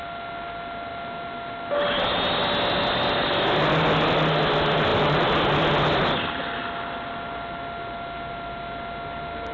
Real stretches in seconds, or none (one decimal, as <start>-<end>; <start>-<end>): 0.0-9.5